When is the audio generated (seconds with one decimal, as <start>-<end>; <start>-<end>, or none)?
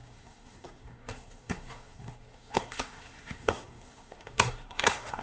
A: 0.0-5.2